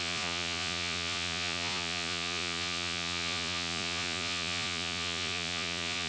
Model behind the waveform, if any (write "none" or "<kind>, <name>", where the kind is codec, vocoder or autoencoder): vocoder, Vocos